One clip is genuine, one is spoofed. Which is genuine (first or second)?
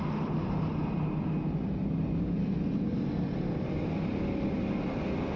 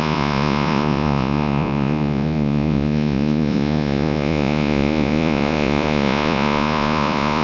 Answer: first